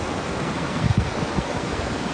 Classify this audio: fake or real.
fake